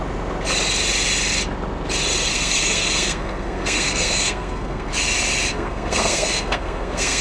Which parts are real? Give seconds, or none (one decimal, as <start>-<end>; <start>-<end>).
0.0-2.3; 4.9-5.5